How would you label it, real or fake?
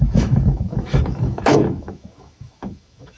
fake